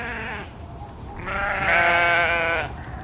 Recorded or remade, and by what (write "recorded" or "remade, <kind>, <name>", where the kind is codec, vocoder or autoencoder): recorded